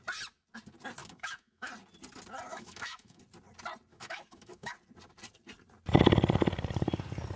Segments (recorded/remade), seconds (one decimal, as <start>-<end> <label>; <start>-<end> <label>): 0.0-1.0 recorded; 1.0-1.7 remade; 1.7-2.5 recorded; 2.5-3.2 remade; 3.2-3.9 recorded; 3.9-4.7 remade; 4.7-7.4 recorded